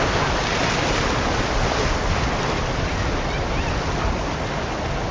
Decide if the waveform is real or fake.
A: real